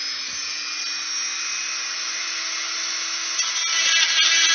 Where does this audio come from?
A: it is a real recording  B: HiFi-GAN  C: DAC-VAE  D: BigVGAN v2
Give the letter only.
A